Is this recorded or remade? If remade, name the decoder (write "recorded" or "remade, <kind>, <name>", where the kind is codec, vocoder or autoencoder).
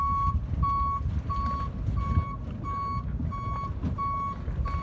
recorded